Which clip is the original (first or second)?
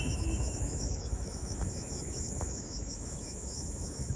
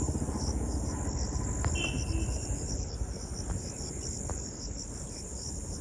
second